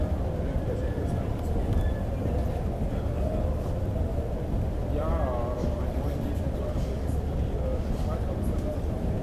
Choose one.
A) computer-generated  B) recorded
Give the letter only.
B